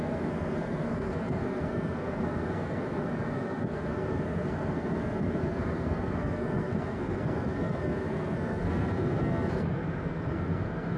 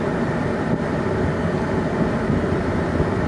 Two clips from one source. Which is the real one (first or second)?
second